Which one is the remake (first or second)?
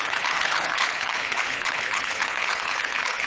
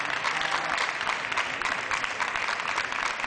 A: first